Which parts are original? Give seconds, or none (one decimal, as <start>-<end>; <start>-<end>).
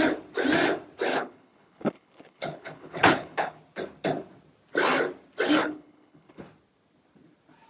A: 0.0-1.1; 3.6-5.6; 6.4-7.7